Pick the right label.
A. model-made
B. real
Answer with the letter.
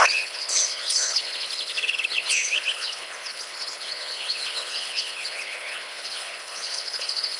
A